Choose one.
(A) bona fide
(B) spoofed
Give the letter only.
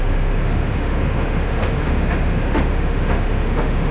B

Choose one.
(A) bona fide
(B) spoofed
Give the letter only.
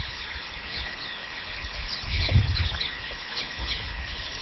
B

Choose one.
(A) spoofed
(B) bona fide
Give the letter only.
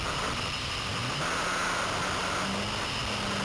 B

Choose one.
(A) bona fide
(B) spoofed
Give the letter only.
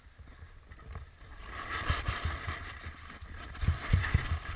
B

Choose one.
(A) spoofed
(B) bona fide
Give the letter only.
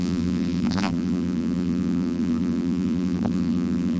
A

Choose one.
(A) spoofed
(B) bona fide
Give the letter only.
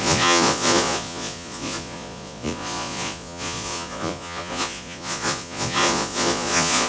A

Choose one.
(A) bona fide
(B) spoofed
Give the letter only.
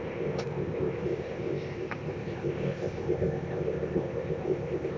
B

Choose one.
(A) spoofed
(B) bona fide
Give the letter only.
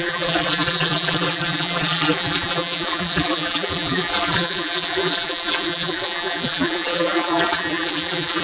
A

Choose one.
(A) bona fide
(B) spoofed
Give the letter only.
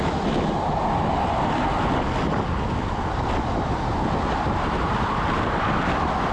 A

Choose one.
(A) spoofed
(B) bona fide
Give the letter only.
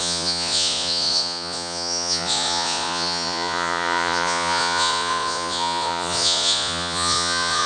A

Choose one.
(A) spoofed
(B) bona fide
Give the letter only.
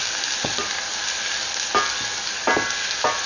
B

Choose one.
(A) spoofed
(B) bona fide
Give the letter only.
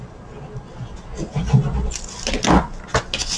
B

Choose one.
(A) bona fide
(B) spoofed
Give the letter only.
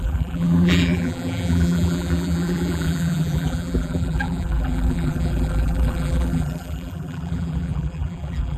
B